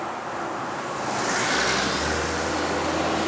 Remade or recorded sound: recorded